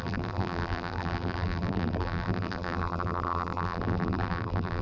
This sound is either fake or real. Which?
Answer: fake